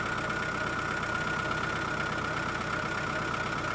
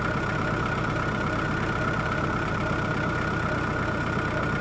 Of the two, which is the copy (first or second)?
second